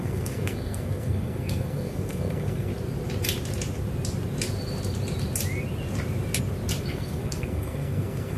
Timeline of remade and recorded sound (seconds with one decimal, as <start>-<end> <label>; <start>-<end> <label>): 0.0-2.7 remade; 2.7-6.8 recorded; 6.8-8.4 remade